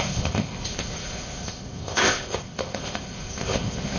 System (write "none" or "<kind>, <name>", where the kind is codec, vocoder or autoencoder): codec, ZipCodec